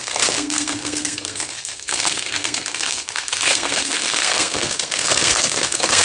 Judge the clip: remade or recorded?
remade